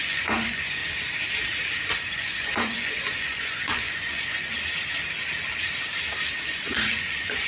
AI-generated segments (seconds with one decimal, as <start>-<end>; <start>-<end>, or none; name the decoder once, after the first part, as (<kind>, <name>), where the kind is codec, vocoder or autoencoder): 0.0-0.8 (vocoder, Vocos); 1.8-4.5; 6.4-7.5